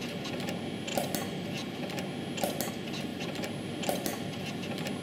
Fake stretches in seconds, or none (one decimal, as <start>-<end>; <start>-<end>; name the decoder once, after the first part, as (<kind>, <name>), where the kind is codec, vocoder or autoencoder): none